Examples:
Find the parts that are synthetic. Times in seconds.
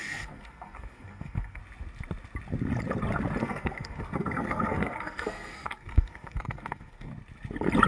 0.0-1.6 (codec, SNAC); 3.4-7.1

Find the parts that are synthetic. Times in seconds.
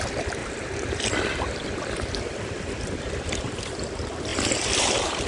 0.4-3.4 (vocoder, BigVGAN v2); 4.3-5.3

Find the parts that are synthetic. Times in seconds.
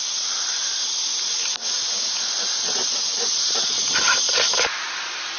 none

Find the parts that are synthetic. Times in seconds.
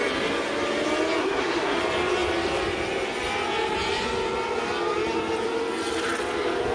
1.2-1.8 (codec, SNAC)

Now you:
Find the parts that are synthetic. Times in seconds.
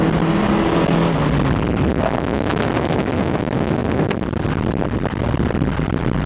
none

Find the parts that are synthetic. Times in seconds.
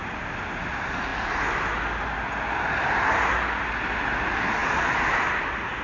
none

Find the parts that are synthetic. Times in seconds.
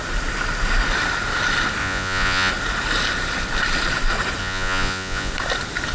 1.8-2.5 (vocoder, Vocos); 4.4-5.3